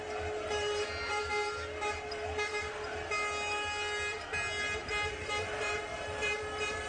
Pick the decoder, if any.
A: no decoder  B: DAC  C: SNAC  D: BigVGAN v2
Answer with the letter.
A